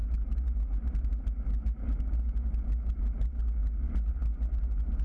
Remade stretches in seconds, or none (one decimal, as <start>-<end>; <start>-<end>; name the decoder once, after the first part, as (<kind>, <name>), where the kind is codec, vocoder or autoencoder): none